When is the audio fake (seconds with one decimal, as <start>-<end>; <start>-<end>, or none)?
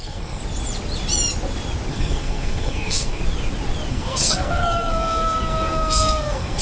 0.0-0.4; 1.9-3.2; 3.9-6.6